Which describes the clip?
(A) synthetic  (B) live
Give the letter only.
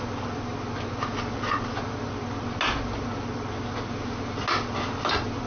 B